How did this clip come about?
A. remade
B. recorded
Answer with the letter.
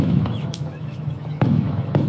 A